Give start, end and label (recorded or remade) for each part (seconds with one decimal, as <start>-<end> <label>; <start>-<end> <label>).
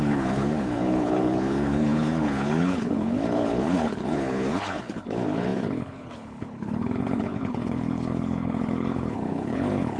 0.0-10.0 remade